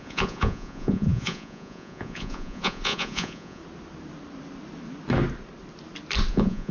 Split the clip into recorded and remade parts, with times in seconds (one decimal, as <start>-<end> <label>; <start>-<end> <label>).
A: 0.0-3.6 remade; 3.6-6.3 recorded; 6.3-6.7 remade